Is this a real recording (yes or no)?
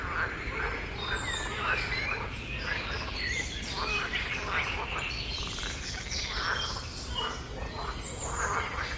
yes